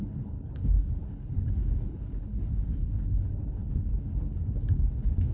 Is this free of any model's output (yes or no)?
no